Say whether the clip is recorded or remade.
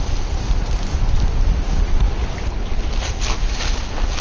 recorded